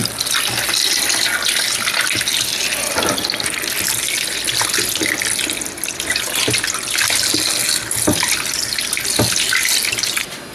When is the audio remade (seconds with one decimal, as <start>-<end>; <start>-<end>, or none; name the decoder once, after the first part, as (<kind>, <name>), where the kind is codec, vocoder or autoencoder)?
none